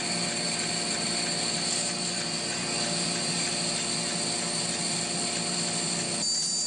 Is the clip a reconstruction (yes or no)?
no